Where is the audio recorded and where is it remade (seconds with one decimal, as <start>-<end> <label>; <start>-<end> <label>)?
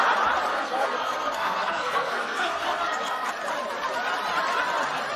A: 0.0-0.5 recorded; 0.5-3.3 remade; 3.3-5.2 recorded